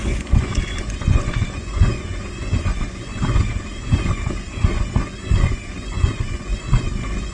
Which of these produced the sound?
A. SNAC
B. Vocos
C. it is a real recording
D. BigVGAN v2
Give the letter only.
B